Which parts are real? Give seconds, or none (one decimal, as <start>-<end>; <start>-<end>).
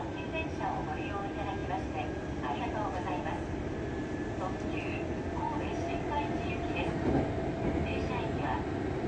0.0-9.1